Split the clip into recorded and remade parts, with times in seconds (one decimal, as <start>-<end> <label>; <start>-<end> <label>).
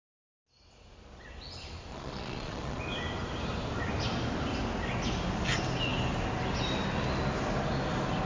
0.0-1.9 recorded; 1.9-2.8 remade; 2.8-8.3 recorded